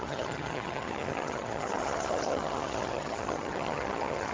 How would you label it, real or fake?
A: fake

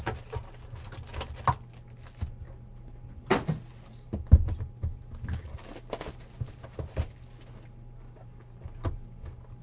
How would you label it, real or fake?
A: real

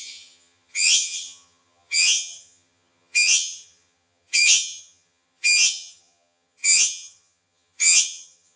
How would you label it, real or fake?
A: fake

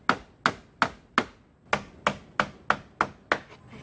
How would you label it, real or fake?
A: real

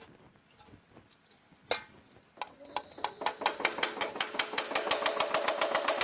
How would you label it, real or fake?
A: real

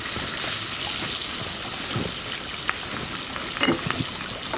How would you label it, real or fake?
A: real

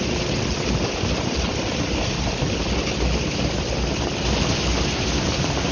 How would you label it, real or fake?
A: real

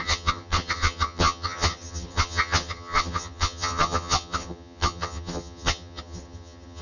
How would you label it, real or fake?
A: fake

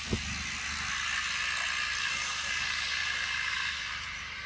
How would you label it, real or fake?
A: real